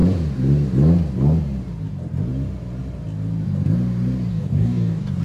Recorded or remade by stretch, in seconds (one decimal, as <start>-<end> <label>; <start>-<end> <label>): 0.0-4.3 recorded; 4.3-5.2 remade